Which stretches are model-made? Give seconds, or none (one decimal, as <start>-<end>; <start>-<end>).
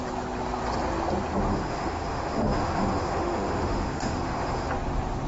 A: 1.5-4.7